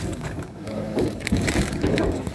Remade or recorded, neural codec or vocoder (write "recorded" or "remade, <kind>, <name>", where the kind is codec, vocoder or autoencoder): remade, codec, DAC